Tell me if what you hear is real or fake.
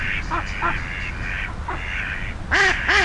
real